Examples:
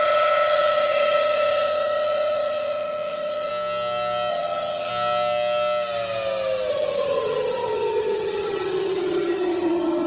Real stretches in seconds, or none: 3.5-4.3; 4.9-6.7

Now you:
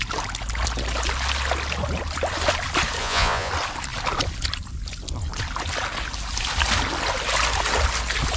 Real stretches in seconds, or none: 0.0-3.0; 3.5-8.4

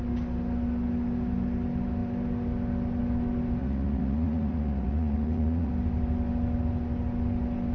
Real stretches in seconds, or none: 0.0-3.6; 5.7-7.7

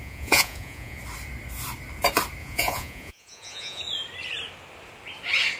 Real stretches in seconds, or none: 1.0-2.4; 3.8-5.6

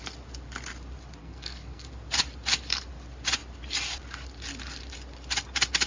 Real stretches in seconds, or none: 0.0-1.2; 1.9-5.9